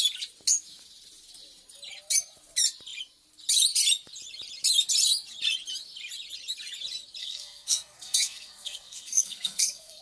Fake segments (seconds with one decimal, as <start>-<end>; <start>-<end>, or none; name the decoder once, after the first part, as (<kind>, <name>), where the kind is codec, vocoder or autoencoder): 7.2-10.0 (codec, SNAC)